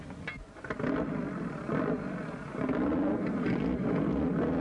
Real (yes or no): yes